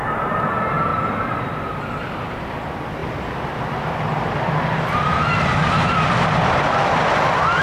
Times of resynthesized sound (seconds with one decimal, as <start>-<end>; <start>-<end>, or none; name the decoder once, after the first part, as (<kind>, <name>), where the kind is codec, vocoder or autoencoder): none